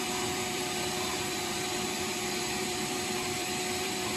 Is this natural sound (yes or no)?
no